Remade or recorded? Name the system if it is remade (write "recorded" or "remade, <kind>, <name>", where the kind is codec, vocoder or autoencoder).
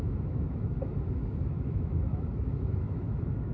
remade, autoencoder, DAC-VAE